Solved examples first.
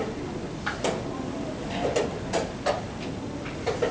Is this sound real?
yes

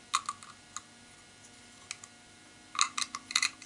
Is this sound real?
yes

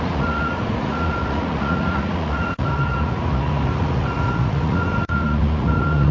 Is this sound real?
no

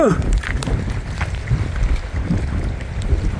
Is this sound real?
yes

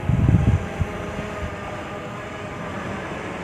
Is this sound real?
yes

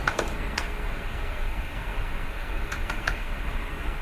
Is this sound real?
no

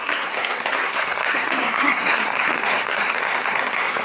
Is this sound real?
no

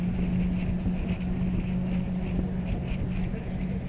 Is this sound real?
yes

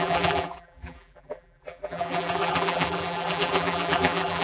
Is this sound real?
no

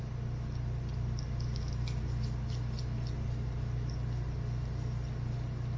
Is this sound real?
yes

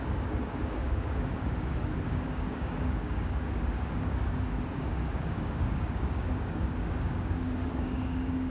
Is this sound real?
no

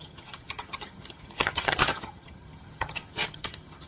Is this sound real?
no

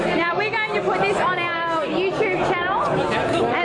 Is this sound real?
yes